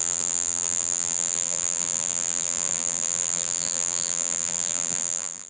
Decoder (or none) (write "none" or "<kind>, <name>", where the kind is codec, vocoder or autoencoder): vocoder, BigVGAN v2